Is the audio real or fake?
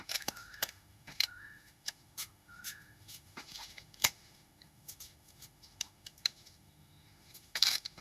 fake